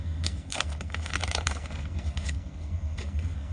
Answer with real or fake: fake